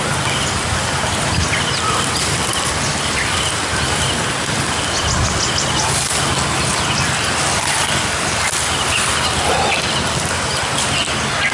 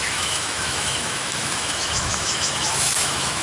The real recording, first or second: first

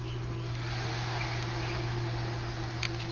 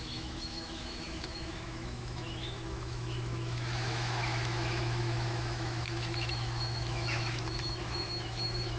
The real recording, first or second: first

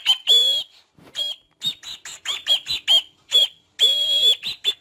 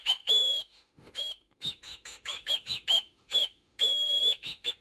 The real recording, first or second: first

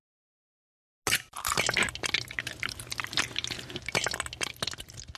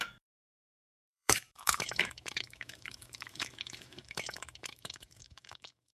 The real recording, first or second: first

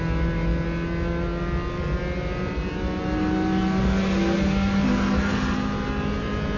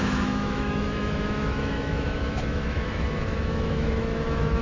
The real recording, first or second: first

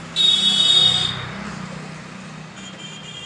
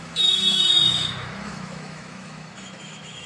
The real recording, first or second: first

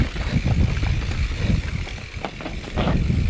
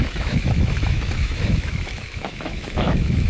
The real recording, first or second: first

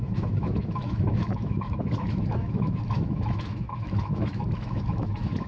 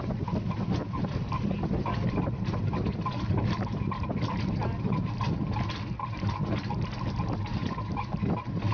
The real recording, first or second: second